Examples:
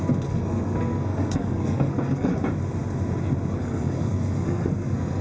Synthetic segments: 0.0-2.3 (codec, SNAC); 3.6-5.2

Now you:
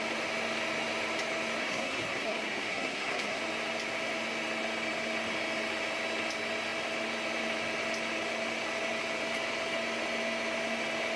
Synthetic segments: 1.6-3.4 (codec, SNAC)

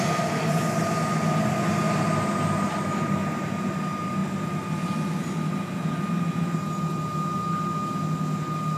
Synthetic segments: none